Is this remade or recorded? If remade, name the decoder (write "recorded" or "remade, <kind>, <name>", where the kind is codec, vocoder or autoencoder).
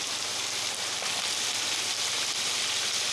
remade, vocoder, BigVGAN v2